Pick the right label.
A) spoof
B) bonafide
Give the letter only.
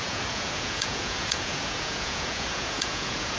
A